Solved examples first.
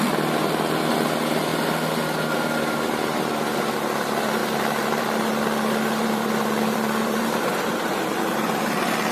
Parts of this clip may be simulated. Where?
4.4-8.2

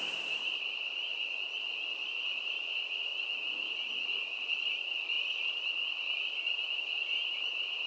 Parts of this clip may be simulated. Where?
0.0-1.1; 2.4-3.1; 6.8-7.9